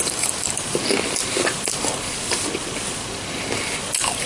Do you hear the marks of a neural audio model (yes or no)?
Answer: no